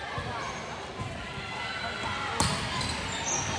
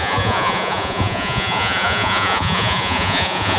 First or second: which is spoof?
second